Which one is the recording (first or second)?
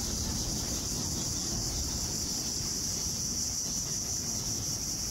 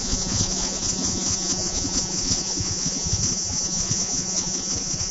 first